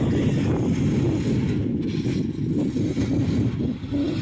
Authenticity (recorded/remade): recorded